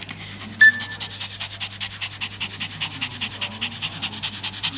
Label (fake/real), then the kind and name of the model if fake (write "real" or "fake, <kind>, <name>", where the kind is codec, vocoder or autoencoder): real